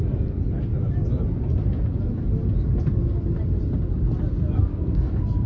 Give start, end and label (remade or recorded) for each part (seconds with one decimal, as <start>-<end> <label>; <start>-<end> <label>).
0.0-4.7 recorded; 4.7-5.5 remade